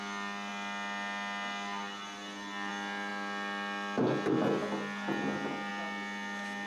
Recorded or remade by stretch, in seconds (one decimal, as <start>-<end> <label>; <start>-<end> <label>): 0.0-6.7 recorded